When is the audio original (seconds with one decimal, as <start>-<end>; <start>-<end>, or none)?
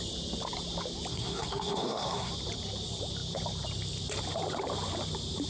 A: 0.0-1.1; 2.3-5.5